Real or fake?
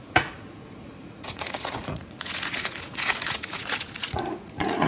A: fake